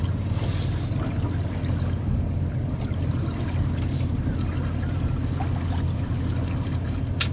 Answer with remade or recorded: recorded